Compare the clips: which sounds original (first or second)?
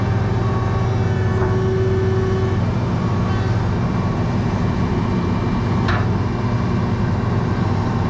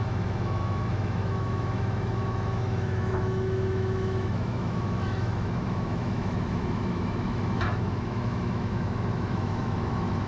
first